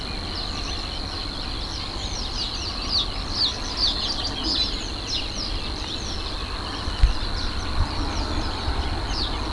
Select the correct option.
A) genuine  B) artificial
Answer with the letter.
A